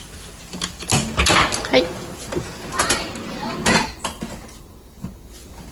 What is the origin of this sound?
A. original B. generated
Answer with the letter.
A